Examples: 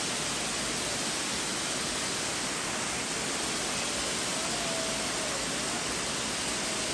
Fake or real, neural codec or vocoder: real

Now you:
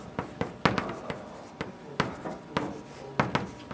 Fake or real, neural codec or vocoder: real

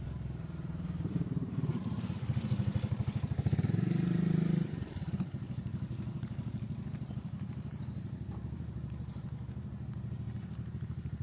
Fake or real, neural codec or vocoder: fake, vocoder, BigVGAN v2